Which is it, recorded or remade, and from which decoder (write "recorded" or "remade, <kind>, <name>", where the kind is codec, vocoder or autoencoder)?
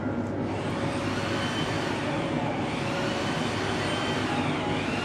recorded